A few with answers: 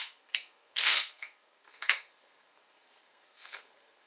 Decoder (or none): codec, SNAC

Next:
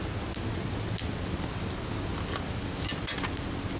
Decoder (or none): none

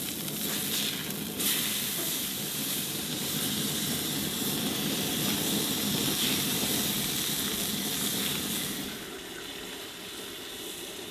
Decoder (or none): none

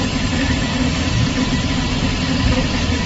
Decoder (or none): none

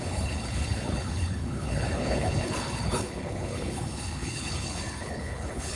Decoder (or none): codec, HILCodec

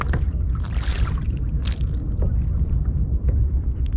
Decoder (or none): none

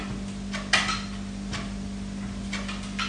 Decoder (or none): none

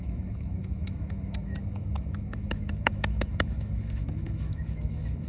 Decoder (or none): autoencoder, DAC-VAE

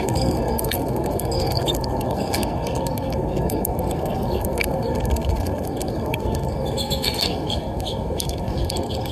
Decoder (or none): codec, SNAC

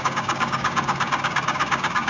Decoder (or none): codec, DAC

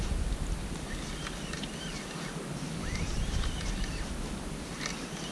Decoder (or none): none